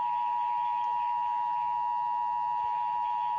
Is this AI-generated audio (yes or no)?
no